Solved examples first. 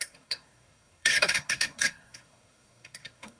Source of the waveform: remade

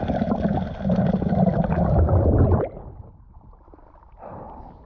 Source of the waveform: recorded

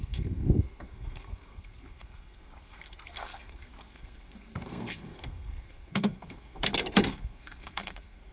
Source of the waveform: remade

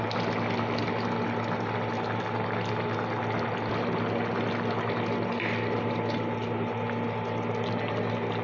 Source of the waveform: recorded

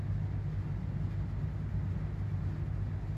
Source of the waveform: recorded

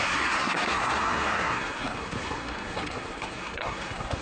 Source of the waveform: remade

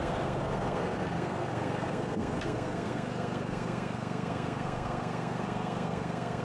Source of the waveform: remade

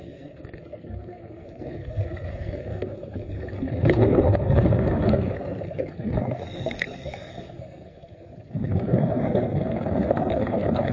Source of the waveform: remade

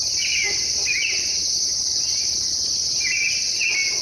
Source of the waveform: recorded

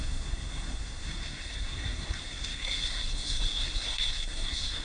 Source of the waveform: remade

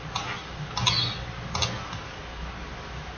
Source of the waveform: recorded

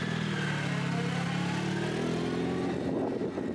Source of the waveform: recorded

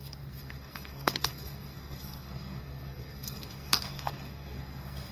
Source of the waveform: remade